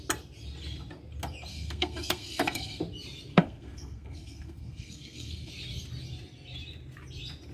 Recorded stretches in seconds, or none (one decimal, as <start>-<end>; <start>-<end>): 0.0-1.5; 2.8-3.3; 5.5-7.5